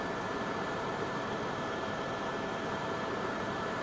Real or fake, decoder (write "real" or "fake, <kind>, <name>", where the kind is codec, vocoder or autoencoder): fake, vocoder, BigVGAN v2